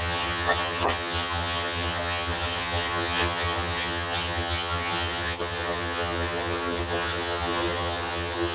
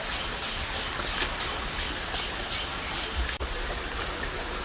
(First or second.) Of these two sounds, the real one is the second